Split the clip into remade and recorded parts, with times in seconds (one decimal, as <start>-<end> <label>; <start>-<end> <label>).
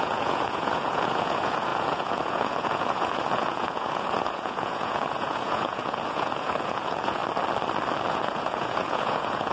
0.0-7.2 remade; 7.2-8.1 recorded; 8.1-9.5 remade